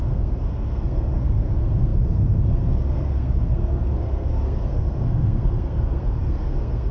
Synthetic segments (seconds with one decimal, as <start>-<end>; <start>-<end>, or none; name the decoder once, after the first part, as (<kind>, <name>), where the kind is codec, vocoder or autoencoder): 0.0-6.9 (codec, SNAC)